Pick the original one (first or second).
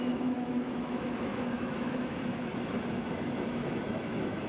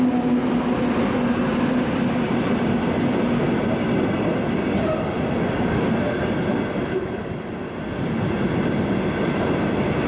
second